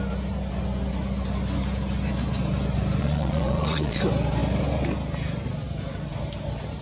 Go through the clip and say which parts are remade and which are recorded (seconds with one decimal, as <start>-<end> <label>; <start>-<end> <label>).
0.0-3.0 recorded; 3.0-4.0 remade; 4.0-6.8 recorded